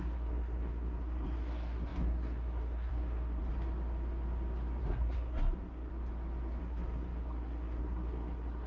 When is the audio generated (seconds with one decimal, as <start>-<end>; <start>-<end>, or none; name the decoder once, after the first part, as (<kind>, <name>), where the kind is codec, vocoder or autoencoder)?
0.0-3.4 (codec, SNAC); 4.8-5.9; 6.6-8.7